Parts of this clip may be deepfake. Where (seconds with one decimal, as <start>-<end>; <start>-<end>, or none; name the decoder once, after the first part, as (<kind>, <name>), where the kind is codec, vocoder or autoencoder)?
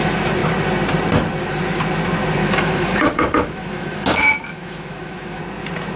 2.4-5.4 (autoencoder, DAC-VAE)